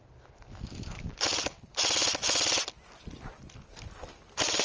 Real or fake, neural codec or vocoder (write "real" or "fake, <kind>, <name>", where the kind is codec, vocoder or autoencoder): real